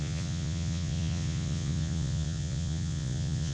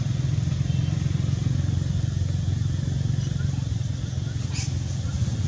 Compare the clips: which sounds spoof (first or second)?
first